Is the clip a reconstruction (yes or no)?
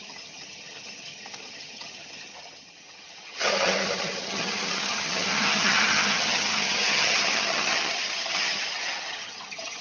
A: yes